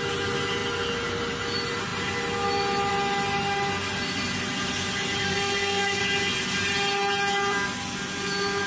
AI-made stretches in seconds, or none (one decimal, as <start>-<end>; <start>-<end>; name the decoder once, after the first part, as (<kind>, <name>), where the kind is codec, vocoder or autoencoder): 5.2-6.0 (codec, SNAC)